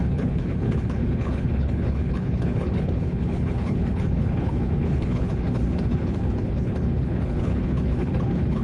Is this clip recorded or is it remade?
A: remade